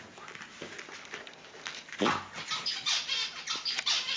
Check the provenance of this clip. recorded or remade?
recorded